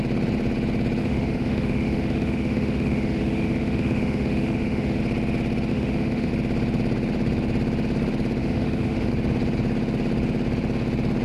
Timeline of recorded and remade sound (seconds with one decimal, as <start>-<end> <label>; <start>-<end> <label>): 0.0-1.0 recorded; 1.0-5.0 remade; 5.0-5.7 recorded; 5.7-6.3 remade; 6.3-8.4 recorded; 8.4-9.1 remade; 9.1-11.2 recorded